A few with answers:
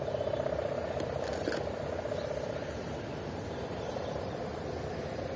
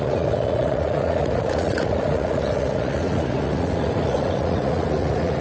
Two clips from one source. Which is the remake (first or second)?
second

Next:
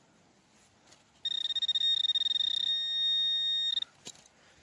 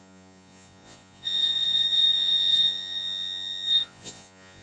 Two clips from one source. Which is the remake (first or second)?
second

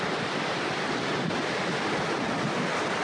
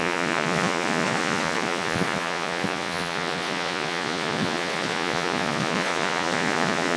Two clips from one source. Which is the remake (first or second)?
second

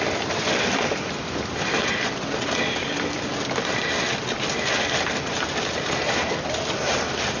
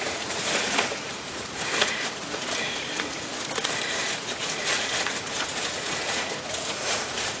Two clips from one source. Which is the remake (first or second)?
second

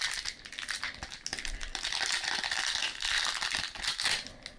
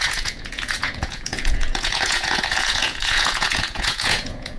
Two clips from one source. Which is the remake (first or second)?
second